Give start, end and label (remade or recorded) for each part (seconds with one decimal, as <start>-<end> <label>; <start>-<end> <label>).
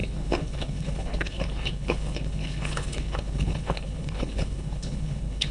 0.0-5.5 remade